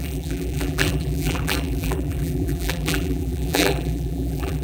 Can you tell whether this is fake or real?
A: fake